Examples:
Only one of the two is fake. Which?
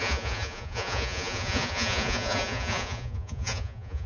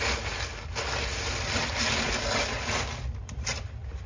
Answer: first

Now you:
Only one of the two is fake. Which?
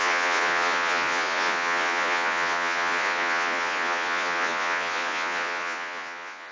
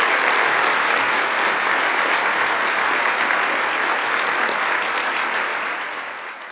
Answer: first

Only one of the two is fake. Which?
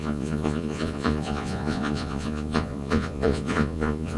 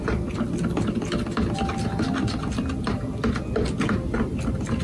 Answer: first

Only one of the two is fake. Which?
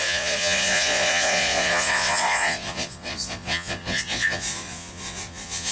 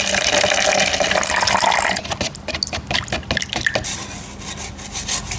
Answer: first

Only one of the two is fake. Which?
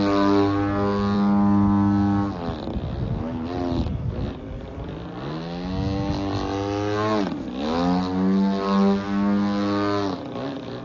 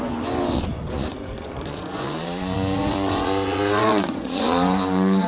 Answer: second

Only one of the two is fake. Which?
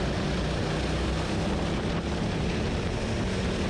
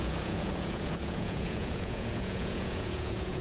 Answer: second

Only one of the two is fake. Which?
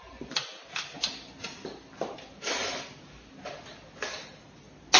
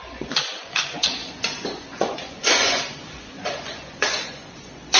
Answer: second